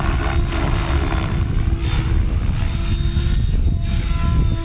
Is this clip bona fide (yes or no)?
yes